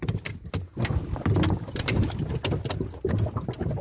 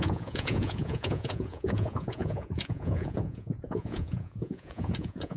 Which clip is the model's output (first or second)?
second